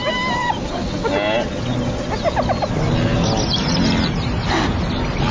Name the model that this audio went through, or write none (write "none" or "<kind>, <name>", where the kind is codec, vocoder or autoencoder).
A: none